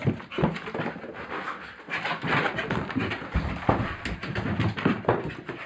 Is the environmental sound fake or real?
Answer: real